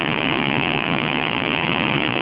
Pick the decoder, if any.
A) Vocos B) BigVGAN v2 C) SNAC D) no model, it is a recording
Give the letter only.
A